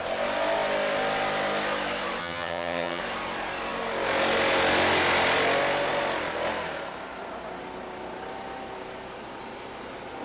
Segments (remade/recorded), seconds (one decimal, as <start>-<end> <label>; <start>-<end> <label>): 0.0-2.2 recorded; 2.2-3.0 remade; 3.0-10.2 recorded